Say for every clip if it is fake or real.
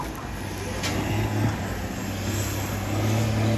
real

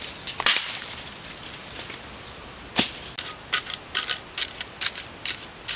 real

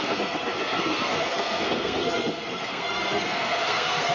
fake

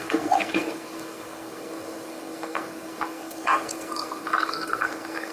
fake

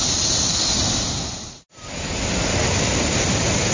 real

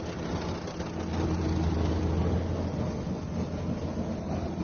real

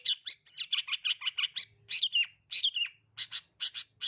real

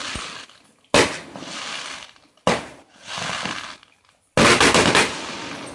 real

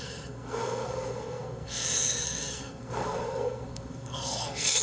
fake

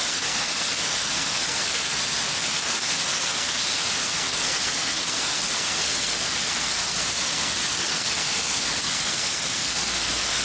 fake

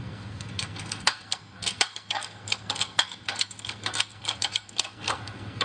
fake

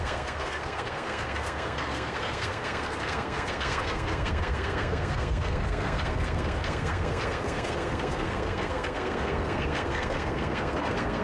fake